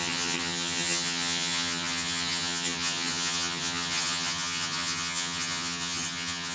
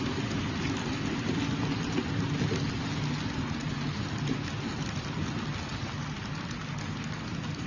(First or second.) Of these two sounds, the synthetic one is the first